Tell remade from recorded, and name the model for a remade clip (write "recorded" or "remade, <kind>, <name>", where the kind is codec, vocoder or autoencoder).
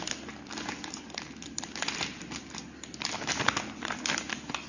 recorded